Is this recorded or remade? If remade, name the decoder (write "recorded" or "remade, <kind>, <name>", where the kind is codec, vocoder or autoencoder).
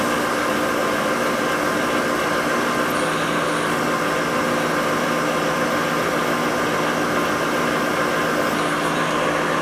recorded